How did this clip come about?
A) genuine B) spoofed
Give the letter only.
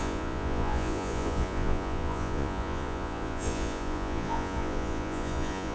B